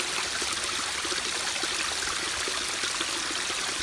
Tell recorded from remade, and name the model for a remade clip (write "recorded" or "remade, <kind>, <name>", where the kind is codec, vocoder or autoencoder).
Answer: recorded